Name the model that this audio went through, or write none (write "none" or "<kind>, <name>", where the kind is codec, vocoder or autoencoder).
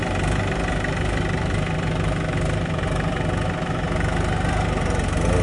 none